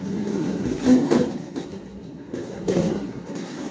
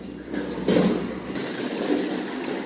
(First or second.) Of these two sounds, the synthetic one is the first